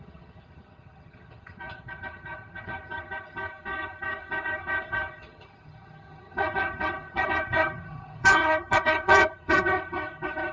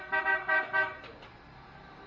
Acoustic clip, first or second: second